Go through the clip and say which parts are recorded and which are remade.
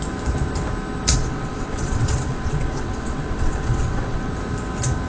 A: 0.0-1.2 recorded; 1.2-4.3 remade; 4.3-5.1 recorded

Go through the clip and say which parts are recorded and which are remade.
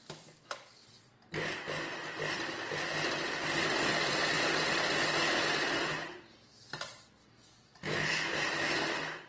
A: 0.0-7.2 recorded; 7.2-8.8 remade; 8.8-9.3 recorded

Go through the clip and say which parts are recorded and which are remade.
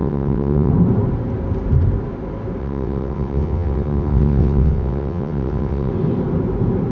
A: 0.0-0.7 remade; 0.7-2.6 recorded; 2.6-5.9 remade; 5.9-6.9 recorded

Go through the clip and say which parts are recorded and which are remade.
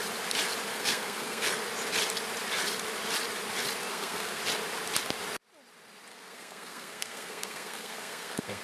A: 0.0-0.7 recorded; 0.7-1.6 remade; 1.6-3.9 recorded; 3.9-4.4 remade; 4.4-6.1 recorded; 6.1-8.6 remade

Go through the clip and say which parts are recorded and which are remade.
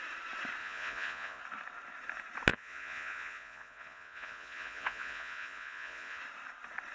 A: 0.0-0.6 recorded; 0.6-1.4 remade; 1.4-2.5 recorded; 2.5-6.2 remade; 6.2-6.9 recorded